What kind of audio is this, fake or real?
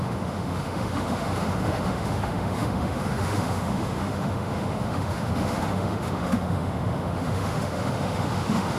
fake